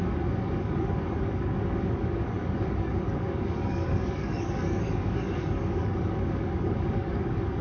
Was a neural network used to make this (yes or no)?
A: yes